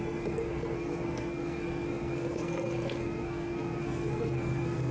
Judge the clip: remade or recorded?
remade